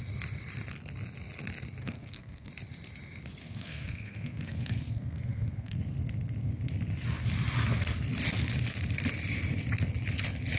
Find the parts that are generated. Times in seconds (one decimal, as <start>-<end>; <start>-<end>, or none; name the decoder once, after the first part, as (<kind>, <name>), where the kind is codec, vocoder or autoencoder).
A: 1.8-2.5 (codec, SNAC); 3.4-5.8